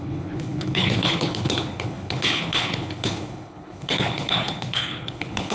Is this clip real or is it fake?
fake